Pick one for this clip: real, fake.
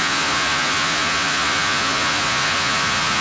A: fake